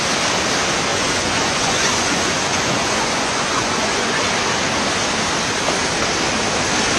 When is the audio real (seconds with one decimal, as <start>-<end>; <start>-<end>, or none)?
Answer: 0.0-0.9; 4.2-7.0